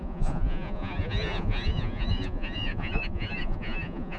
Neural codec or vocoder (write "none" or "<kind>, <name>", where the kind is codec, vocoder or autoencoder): vocoder, Vocos